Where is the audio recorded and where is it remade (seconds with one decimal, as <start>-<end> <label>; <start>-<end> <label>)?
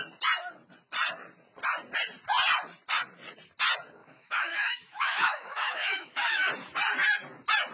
0.0-4.0 recorded; 4.0-6.5 remade; 6.5-7.7 recorded